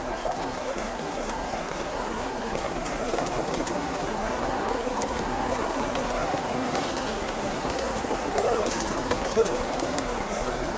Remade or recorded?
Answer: remade